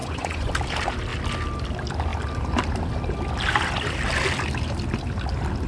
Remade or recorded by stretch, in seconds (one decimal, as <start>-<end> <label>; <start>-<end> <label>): 0.0-0.5 remade; 0.5-5.7 recorded